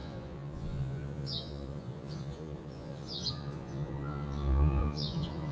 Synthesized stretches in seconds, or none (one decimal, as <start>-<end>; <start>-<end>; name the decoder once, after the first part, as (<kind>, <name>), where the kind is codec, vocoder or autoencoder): 0.0-5.5 (vocoder, Vocos)